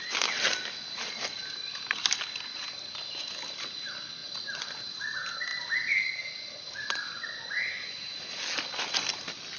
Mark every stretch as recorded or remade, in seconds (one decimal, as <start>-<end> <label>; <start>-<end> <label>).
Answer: 0.0-5.5 recorded; 5.5-6.0 remade; 6.0-9.6 recorded